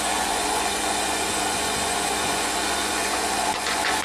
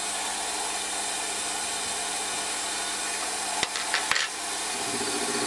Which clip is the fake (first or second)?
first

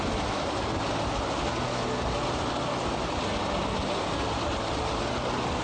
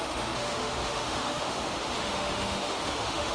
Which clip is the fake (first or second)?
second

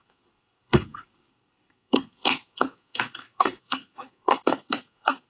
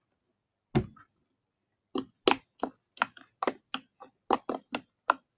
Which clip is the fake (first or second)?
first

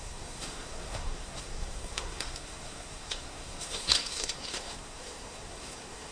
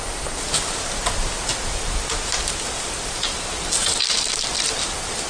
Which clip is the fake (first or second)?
first